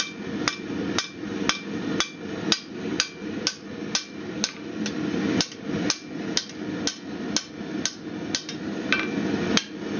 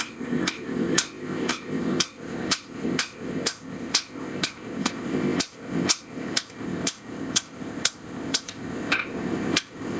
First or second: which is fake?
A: second